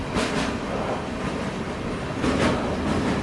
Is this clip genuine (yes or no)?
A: no